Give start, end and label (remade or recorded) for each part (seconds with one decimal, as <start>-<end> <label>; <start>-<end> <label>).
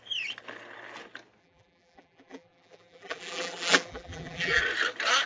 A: 0.0-1.4 recorded; 1.4-4.6 remade; 4.6-5.3 recorded